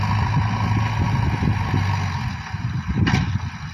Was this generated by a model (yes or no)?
no